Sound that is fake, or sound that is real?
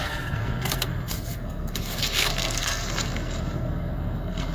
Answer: fake